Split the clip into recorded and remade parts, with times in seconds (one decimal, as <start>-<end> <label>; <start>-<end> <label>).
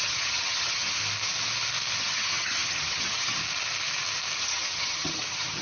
0.0-1.0 remade; 1.0-2.0 recorded; 2.0-3.4 remade; 3.4-4.4 recorded; 4.4-5.6 remade